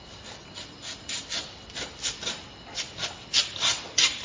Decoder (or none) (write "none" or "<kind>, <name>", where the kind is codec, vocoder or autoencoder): none